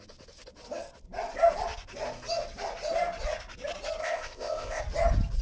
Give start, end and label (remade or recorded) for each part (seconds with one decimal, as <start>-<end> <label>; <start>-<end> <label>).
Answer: 0.0-4.0 recorded; 4.0-4.8 remade; 4.8-5.4 recorded